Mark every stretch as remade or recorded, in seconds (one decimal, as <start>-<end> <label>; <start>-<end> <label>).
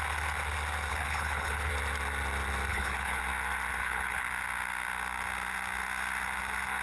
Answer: 0.0-0.9 recorded; 0.9-1.7 remade; 1.7-2.7 recorded; 2.7-3.2 remade; 3.2-3.8 recorded; 3.8-4.3 remade; 4.3-6.8 recorded